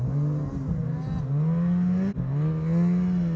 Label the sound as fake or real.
real